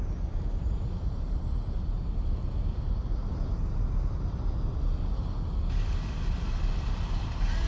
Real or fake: real